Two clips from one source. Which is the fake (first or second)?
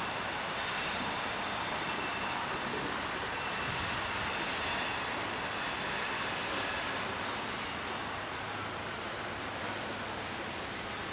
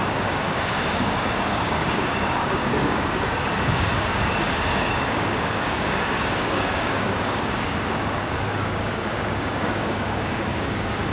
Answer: second